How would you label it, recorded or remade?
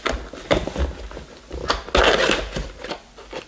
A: recorded